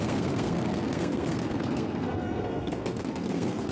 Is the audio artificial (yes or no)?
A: yes